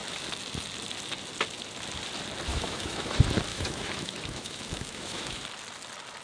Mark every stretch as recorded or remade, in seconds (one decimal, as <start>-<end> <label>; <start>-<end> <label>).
0.0-2.5 recorded; 2.5-3.1 remade; 3.1-3.5 recorded; 3.5-5.4 remade; 5.4-6.2 recorded